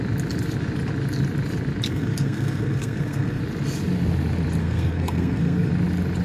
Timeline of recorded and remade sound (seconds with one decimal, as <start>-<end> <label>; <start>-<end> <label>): 0.0-1.9 recorded; 1.9-3.4 remade; 3.4-4.6 recorded; 4.6-5.7 remade; 5.7-6.2 recorded